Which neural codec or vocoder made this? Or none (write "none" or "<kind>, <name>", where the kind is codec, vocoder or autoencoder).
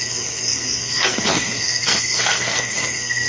codec, SNAC